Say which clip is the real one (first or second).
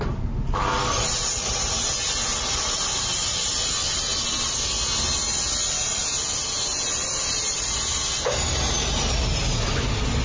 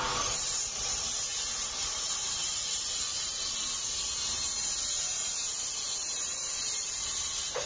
first